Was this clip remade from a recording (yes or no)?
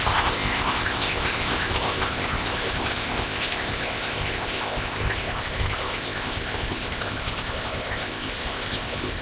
yes